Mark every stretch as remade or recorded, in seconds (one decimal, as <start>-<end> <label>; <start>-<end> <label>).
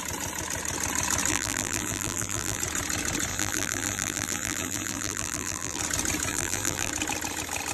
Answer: 0.0-1.3 recorded; 1.3-2.6 remade; 2.6-3.3 recorded; 3.3-5.8 remade; 5.8-6.3 recorded; 6.3-6.9 remade; 6.9-7.7 recorded